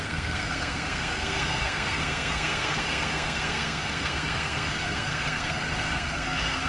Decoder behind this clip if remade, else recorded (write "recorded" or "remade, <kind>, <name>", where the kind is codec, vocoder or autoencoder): remade, codec, SNAC